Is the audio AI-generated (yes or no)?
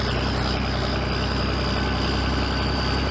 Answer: no